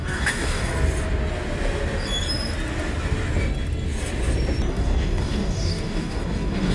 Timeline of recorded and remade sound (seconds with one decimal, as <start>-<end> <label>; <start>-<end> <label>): 0.0-0.7 remade; 0.7-4.7 recorded; 4.7-6.7 remade